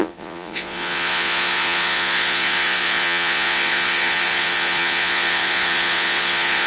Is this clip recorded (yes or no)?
no